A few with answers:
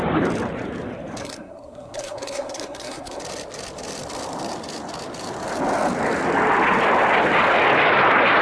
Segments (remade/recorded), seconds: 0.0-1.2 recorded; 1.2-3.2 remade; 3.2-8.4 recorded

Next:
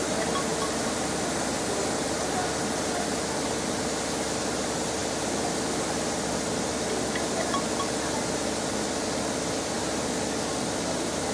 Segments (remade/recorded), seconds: 0.0-11.3 recorded